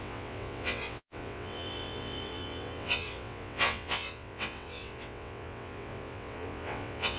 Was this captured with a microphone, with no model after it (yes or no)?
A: no